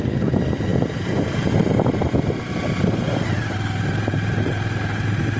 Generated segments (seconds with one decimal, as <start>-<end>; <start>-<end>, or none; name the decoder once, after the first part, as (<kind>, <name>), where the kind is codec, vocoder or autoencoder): 0.7-1.5 (vocoder, BigVGAN v2)